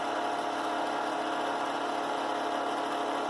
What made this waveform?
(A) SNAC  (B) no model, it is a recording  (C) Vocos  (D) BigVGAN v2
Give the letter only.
B